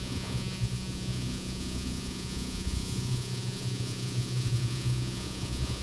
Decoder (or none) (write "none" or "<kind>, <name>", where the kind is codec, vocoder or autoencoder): vocoder, Vocos